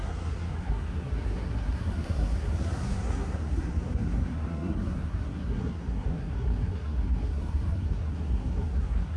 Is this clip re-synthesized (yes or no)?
yes